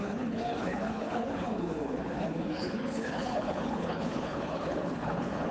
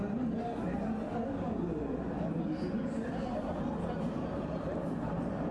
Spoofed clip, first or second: first